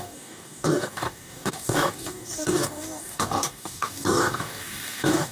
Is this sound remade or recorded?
remade